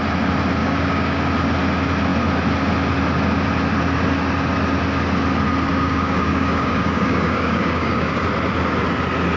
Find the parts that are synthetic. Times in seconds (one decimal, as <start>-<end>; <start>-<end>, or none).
0.6-1.2; 5.7-8.2